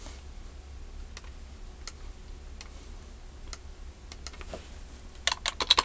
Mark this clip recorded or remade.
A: recorded